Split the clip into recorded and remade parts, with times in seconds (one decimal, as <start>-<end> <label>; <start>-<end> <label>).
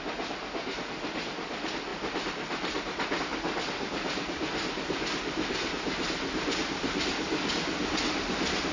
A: 0.0-8.7 recorded